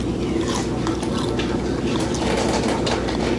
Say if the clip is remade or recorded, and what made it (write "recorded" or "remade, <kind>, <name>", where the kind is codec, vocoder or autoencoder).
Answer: recorded